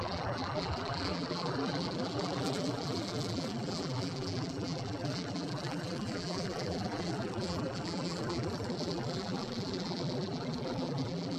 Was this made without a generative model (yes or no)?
no